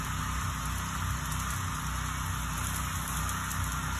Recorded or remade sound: recorded